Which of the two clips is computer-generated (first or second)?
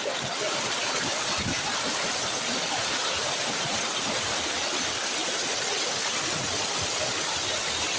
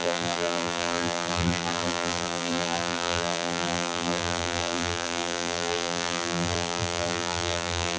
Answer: second